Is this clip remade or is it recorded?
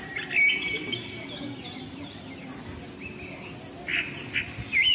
recorded